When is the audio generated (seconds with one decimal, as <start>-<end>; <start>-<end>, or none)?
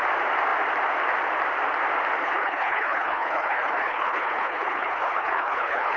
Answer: 2.2-6.0